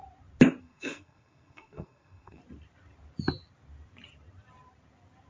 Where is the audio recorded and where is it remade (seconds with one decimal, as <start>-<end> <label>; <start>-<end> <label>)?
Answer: 0.0-0.6 recorded; 0.6-2.4 remade; 2.4-5.3 recorded